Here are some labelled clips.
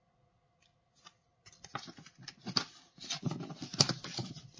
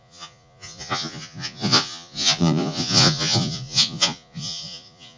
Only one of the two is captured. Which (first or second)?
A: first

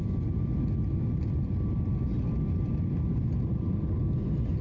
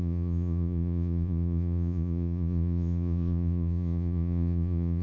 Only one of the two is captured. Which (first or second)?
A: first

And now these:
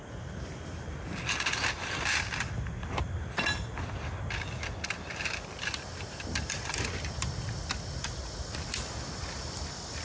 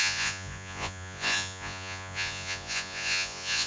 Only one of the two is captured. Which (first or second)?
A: first